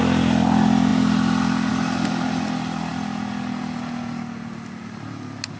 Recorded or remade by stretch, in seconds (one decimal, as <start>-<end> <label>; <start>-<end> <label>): 0.0-5.6 recorded